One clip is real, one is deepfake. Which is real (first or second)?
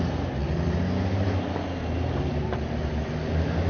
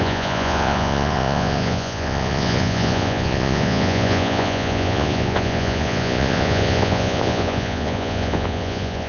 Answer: first